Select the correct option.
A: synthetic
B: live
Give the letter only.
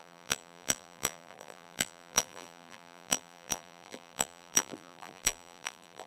A